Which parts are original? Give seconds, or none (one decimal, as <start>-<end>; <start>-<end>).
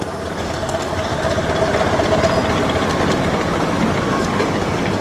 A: 1.1-4.1